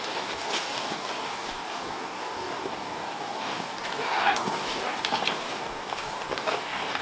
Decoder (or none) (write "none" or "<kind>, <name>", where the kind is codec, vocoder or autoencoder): codec, DAC